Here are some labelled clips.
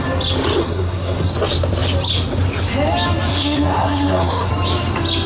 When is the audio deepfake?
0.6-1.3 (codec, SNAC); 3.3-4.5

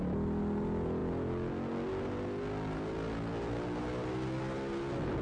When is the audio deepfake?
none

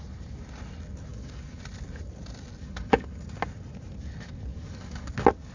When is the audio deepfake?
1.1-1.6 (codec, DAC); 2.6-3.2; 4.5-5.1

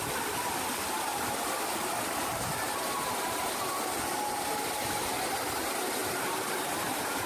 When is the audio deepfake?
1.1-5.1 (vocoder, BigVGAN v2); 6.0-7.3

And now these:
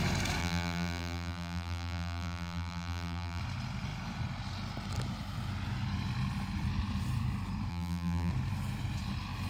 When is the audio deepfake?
0.4-3.4 (vocoder, BigVGAN v2); 7.7-8.3

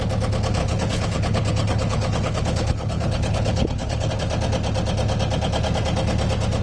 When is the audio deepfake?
0.6-4.1 (codec, HILCodec)

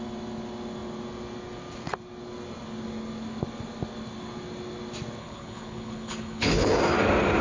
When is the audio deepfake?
5.2-6.8 (codec, HILCodec)

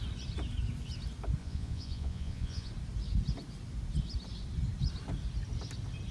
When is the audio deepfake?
1.4-2.7 (vocoder, Vocos)